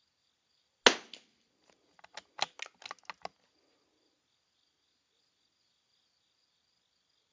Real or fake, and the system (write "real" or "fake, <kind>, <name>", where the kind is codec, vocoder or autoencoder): real